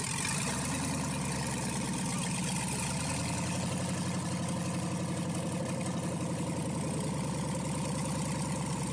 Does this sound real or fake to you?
real